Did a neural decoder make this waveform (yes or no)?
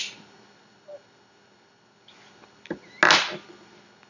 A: no